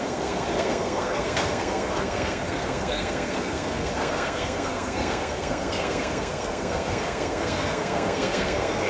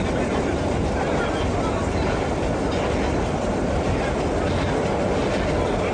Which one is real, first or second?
second